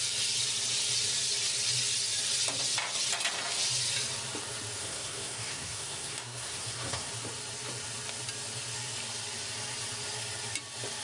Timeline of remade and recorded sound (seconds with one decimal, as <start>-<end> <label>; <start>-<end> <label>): 0.0-4.8 recorded; 4.8-7.1 remade; 7.1-11.0 recorded